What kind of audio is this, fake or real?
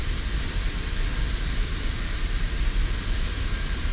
real